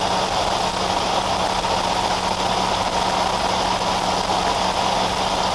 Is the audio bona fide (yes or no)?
yes